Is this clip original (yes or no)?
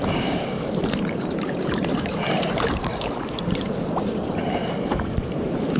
no